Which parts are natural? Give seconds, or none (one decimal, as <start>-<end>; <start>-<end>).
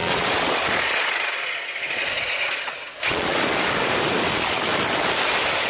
3.4-5.7